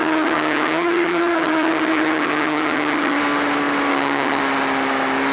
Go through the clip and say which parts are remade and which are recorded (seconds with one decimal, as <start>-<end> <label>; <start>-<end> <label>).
0.0-3.2 remade; 3.2-3.9 recorded; 3.9-4.4 remade; 4.4-5.3 recorded